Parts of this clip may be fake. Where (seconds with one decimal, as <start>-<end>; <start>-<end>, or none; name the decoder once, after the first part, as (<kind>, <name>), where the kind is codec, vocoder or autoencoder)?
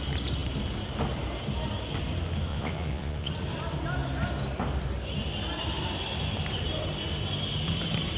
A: 2.5-3.3 (vocoder, Vocos)